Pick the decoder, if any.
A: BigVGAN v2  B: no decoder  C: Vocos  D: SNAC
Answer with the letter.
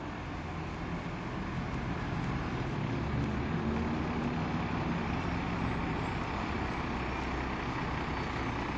B